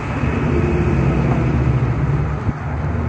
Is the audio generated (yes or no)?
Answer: no